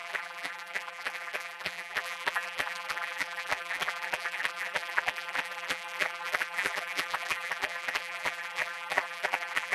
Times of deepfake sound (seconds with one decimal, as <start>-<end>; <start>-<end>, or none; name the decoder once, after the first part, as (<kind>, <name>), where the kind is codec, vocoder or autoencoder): 0.0-9.7 (vocoder, BigVGAN v2)